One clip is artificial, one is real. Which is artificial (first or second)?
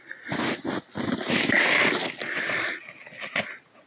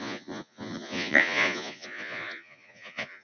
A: second